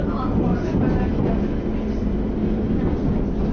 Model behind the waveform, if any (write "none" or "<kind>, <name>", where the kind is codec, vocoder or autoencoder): none